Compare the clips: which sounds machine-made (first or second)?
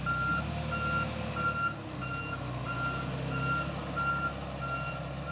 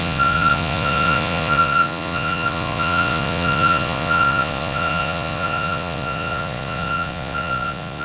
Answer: second